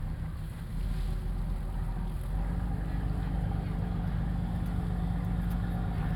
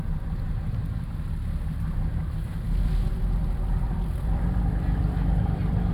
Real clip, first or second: first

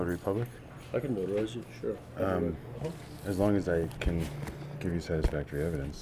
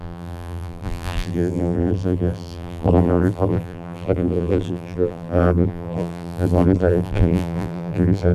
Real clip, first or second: first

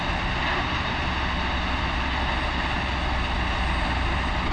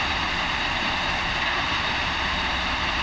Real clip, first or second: first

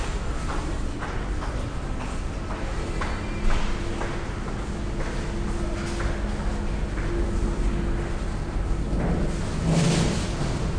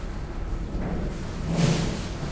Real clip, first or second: first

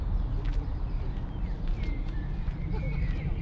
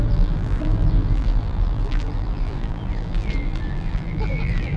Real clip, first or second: first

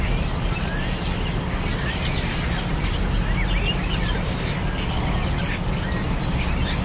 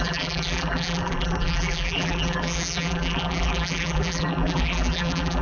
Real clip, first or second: first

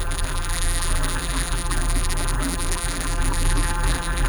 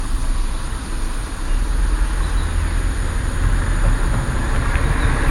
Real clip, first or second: second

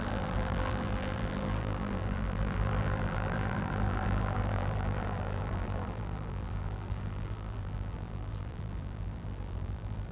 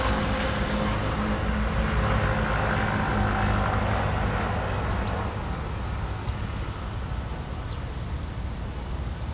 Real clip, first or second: second